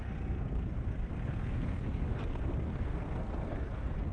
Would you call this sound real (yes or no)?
no